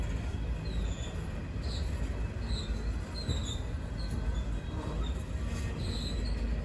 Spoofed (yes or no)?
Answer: no